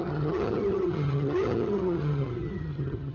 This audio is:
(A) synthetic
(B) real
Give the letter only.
A